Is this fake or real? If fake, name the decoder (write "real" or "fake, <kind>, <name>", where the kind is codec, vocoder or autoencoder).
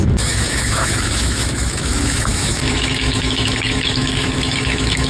fake, autoencoder, DAC-VAE